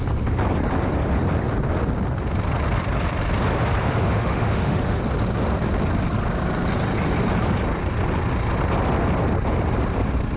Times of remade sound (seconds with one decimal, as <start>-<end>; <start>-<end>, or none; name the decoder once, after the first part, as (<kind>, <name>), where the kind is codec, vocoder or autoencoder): 3.8-5.0 (autoencoder, DAC-VAE)

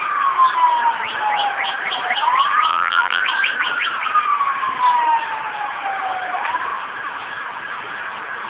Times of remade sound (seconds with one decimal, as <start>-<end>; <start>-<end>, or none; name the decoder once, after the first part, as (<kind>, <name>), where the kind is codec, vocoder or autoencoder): 2.7-3.2 (vocoder, BigVGAN v2)

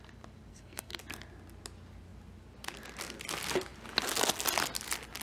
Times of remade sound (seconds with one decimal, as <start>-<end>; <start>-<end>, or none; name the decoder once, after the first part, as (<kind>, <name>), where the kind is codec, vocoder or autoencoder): 0.5-1.0 (codec, SNAC)

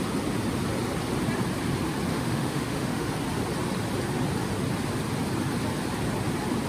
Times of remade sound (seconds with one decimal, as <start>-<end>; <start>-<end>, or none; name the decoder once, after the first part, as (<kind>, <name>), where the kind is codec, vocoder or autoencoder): 2.1-3.1 (autoencoder, DAC-VAE)

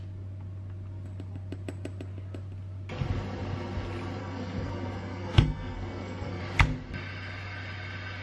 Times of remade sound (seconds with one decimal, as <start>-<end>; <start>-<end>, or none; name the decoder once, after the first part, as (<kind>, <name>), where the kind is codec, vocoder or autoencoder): 4.2-6.4 (codec, SNAC)

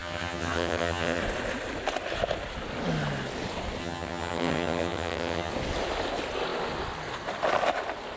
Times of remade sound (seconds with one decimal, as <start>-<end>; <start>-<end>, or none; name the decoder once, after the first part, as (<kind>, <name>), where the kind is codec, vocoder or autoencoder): 0.0-1.2 (vocoder, HiFi-GAN); 3.8-5.5